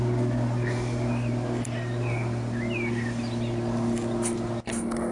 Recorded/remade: recorded